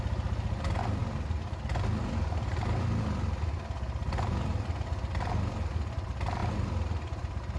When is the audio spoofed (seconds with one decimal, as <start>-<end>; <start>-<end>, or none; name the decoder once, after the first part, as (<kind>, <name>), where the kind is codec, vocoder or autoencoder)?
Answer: none